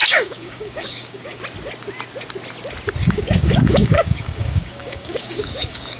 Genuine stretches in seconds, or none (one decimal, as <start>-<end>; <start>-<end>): 1.4-3.0